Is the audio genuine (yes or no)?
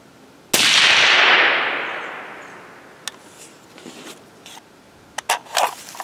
yes